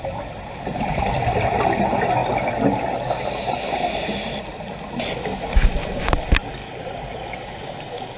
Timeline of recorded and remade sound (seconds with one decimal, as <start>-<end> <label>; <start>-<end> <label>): 0.0-8.2 recorded